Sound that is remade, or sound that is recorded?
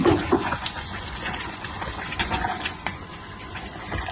remade